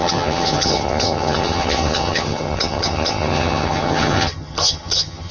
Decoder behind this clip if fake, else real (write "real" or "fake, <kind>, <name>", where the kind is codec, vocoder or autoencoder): fake, vocoder, HiFi-GAN